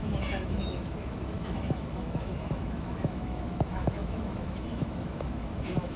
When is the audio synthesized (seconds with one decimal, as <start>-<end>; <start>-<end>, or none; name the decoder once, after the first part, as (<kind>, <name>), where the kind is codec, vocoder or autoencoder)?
0.0-6.0 (autoencoder, DAC-VAE)